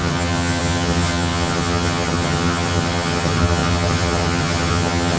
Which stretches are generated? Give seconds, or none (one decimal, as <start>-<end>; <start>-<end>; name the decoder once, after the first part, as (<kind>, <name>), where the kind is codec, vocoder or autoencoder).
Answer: 0.0-5.2 (vocoder, HiFi-GAN)